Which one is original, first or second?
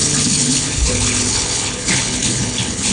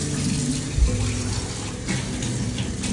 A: second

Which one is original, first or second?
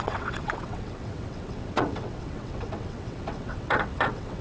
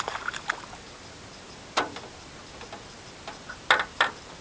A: second